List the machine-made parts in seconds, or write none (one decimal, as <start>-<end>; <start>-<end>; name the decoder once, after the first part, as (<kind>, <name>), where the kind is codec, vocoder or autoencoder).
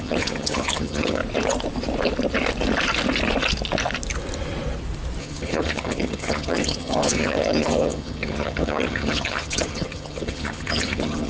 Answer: 0.0-1.2 (vocoder, HiFi-GAN); 5.2-11.3